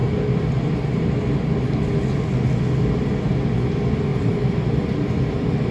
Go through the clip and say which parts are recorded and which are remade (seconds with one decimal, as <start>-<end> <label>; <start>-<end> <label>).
0.0-4.1 recorded; 4.1-5.2 remade; 5.2-5.7 recorded